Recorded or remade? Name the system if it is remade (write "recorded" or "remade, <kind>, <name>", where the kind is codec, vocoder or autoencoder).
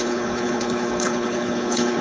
remade, codec, HILCodec